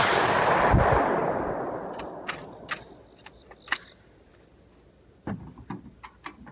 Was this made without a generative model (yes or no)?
yes